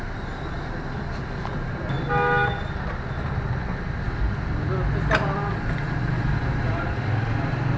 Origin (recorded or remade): recorded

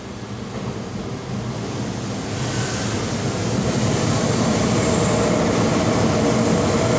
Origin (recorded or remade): recorded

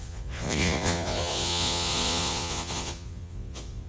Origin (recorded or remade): remade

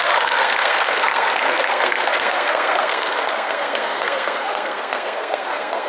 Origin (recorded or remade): remade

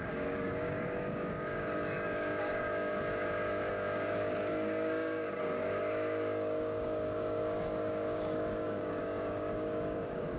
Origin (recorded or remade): remade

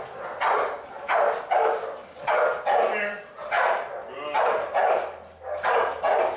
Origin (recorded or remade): recorded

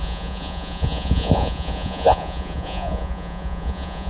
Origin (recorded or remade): remade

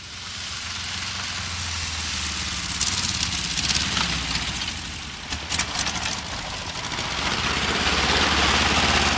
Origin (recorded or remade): recorded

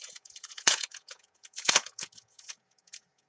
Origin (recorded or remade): remade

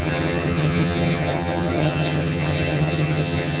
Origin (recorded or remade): remade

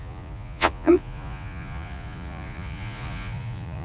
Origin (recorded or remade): remade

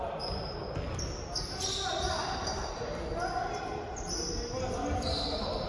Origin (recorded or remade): recorded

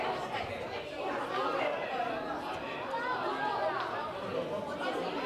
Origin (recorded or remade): recorded